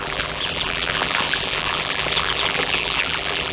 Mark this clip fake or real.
fake